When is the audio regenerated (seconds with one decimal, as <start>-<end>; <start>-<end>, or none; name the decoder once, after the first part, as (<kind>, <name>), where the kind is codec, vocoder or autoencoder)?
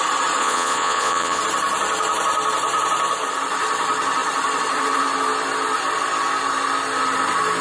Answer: 0.4-1.4 (vocoder, Vocos)